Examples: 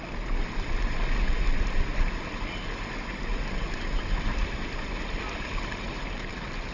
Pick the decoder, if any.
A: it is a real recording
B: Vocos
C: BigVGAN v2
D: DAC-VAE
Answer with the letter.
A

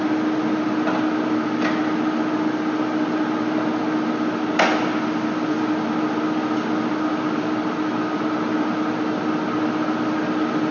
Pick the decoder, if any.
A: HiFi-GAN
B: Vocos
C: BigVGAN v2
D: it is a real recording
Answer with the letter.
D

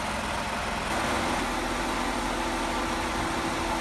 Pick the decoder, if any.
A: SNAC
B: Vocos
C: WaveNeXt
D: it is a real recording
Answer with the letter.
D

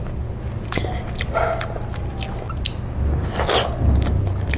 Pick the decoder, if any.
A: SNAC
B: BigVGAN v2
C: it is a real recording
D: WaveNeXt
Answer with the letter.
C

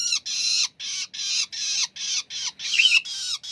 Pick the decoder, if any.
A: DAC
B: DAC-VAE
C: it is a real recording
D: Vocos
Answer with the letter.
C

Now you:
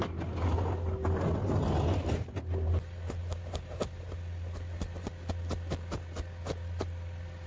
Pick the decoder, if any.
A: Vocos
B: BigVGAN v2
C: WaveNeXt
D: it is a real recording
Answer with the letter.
D